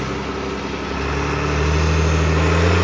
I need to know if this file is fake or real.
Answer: real